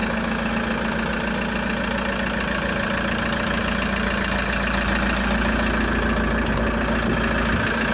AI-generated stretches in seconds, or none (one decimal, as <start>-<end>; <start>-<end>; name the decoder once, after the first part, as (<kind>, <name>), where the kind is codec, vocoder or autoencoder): none